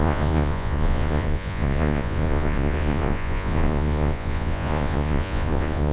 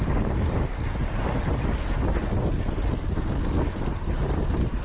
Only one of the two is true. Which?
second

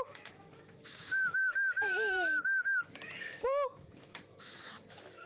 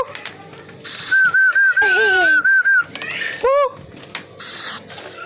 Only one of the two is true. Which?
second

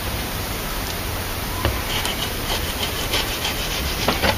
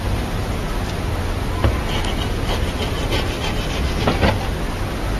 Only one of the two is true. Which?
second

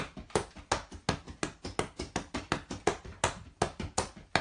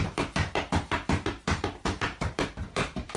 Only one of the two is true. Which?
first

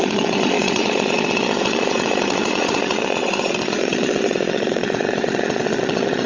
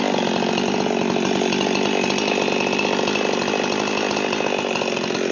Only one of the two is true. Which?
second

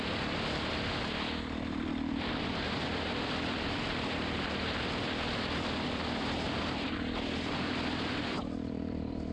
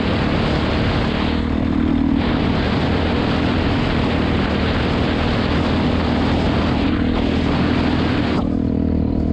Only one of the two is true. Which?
second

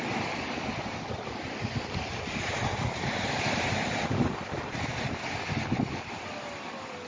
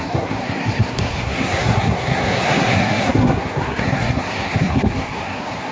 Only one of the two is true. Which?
first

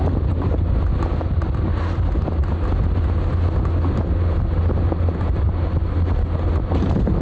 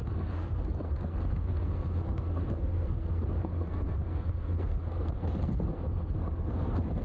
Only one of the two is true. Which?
first